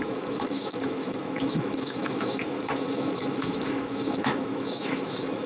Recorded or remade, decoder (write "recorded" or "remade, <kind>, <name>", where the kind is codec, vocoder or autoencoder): remade, autoencoder, DAC-VAE